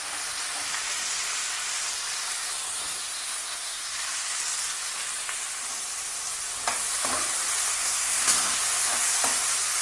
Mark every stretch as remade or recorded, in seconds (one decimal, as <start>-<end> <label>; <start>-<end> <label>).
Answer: 0.0-3.0 recorded; 3.0-4.4 remade; 4.4-7.7 recorded; 7.7-8.6 remade; 8.6-9.8 recorded